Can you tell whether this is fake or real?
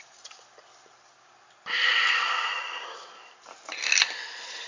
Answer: real